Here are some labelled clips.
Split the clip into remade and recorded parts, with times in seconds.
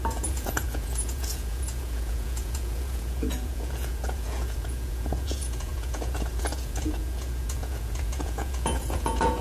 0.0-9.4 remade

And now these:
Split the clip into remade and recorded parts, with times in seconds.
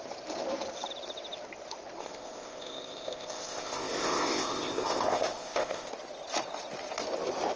0.0-2.0 recorded; 2.0-5.9 remade; 5.9-7.6 recorded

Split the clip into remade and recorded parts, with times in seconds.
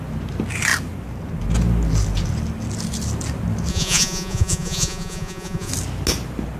0.0-3.7 recorded; 3.7-5.7 remade; 5.7-6.6 recorded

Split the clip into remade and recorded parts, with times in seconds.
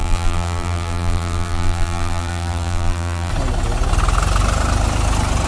0.0-3.3 remade; 3.3-5.5 recorded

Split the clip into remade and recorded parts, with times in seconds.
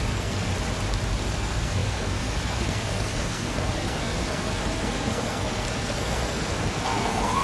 0.0-0.5 remade; 0.5-1.2 recorded; 1.2-7.4 remade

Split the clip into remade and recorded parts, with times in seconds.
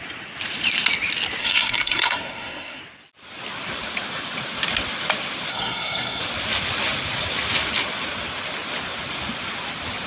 0.0-1.4 recorded; 1.4-2.8 remade; 2.8-5.5 recorded; 5.5-6.2 remade; 6.2-10.1 recorded